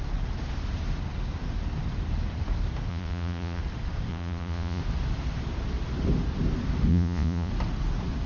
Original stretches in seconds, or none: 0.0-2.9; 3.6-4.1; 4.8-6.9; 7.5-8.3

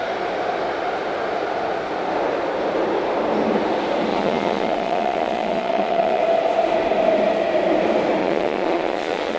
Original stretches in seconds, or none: 0.0-4.1; 6.2-8.2